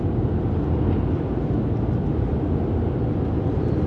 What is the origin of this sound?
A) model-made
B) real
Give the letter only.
B